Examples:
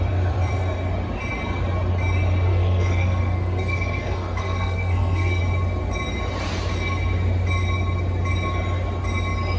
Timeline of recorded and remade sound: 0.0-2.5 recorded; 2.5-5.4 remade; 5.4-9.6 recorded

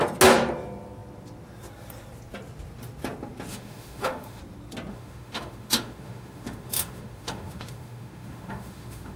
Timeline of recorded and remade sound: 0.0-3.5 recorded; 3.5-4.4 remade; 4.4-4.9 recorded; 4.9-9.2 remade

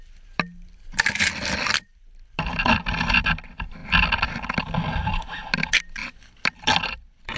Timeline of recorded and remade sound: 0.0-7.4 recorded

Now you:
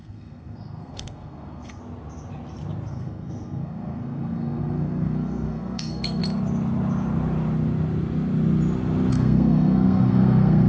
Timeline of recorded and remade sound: 0.0-1.8 remade; 1.8-2.9 recorded; 2.9-6.2 remade; 6.2-9.1 recorded; 9.1-10.7 remade

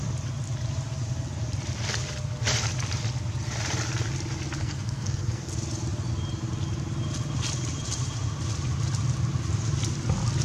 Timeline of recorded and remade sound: 0.0-4.6 recorded; 4.6-5.5 remade; 5.5-10.4 recorded

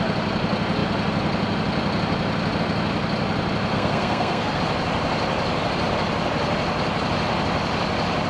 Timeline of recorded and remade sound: 0.0-3.7 recorded; 3.7-4.6 remade; 4.6-8.3 recorded

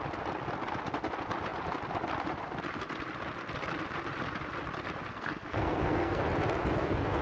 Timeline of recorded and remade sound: 0.0-5.1 recorded; 5.1-6.2 remade; 6.2-7.2 recorded